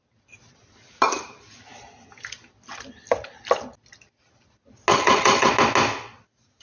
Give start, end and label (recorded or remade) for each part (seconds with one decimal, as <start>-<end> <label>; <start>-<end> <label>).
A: 0.0-4.9 recorded; 4.9-5.5 remade; 5.5-6.6 recorded